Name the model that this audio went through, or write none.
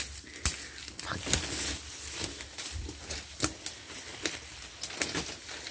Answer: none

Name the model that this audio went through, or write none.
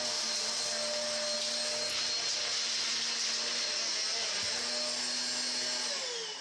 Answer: none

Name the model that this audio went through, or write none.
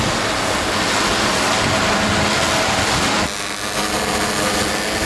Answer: none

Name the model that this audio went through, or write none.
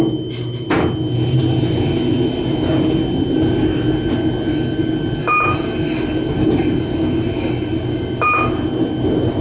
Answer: none